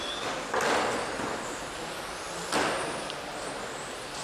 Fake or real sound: real